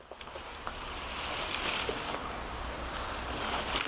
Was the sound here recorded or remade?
recorded